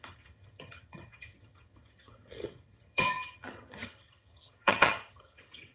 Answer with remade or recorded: remade